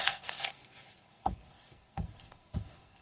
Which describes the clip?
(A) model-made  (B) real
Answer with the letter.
A